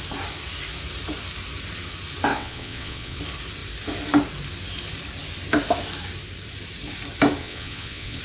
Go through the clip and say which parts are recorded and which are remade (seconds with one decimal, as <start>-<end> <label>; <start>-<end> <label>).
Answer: 0.0-2.3 recorded; 2.3-3.2 remade; 3.2-7.4 recorded; 7.4-8.2 remade